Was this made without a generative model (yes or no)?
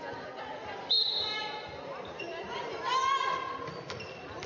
yes